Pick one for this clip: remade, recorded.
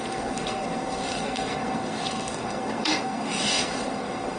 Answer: remade